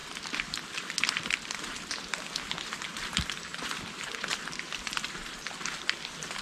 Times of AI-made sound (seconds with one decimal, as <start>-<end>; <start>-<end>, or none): 0.0-1.6; 3.1-5.5